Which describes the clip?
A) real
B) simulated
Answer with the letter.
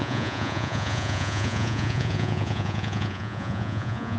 B